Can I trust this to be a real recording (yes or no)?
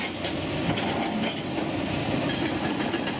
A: no